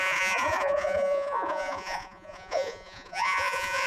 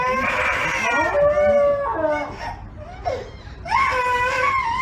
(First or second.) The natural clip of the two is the second